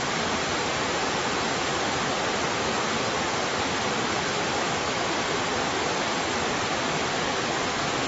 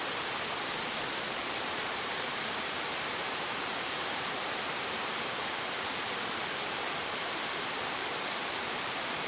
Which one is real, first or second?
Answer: first